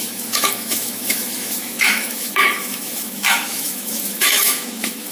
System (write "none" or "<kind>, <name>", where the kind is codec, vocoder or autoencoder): autoencoder, DAC-VAE